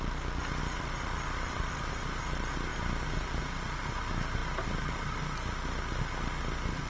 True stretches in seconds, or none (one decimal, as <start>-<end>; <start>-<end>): 0.0-0.6; 1.9-2.7; 3.4-6.9